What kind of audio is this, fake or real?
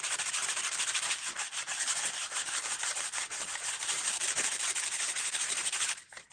fake